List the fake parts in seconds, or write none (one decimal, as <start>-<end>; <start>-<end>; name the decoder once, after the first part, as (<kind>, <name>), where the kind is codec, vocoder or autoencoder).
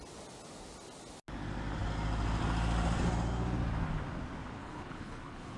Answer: 4.6-5.6 (codec, HILCodec)